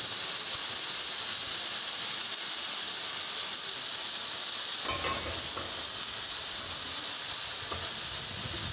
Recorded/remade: recorded